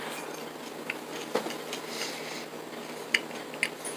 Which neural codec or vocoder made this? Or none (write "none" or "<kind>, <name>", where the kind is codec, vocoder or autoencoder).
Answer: none